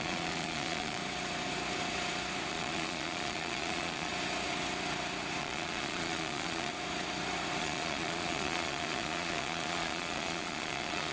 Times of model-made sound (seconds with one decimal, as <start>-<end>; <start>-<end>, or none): 0.0-1.0; 2.5-4.1; 5.4-6.7; 7.6-11.1